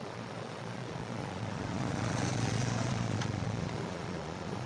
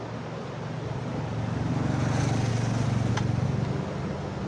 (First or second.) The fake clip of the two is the first